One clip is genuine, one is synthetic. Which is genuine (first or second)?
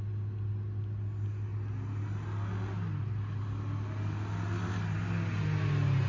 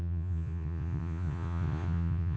first